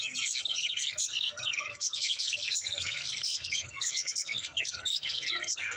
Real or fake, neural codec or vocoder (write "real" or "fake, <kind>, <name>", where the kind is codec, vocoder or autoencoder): fake, codec, SNAC